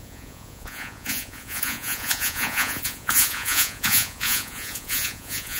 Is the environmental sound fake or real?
fake